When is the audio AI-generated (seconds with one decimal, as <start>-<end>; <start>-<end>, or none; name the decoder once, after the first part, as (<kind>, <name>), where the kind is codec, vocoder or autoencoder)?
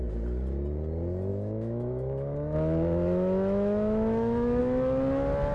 1.3-4.6 (autoencoder, DAC-VAE)